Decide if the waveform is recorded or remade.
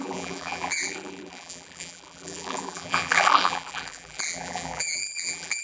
remade